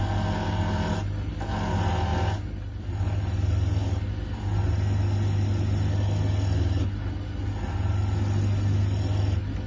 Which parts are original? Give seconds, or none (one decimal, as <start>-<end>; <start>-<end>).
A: 0.0-9.7